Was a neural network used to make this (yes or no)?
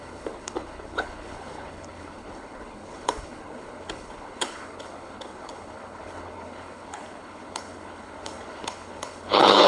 yes